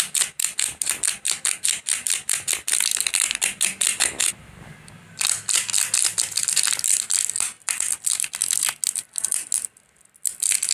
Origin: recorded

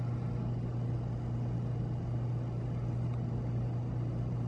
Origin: recorded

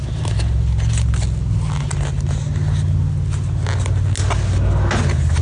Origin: recorded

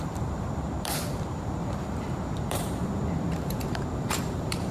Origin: remade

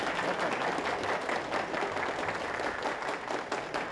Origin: recorded